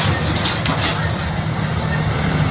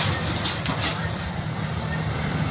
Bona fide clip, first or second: first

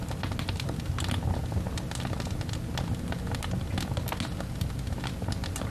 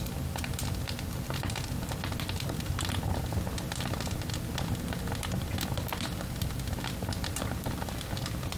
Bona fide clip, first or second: first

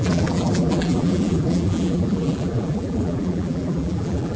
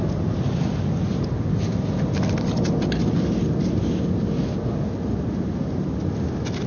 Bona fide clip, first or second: second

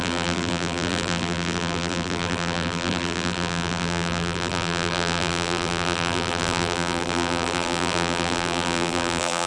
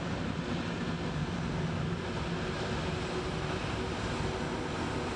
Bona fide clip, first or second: second